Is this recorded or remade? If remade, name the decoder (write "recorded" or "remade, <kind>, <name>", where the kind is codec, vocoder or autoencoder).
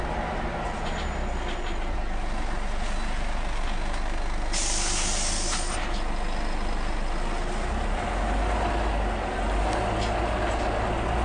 recorded